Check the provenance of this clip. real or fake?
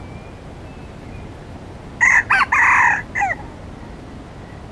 real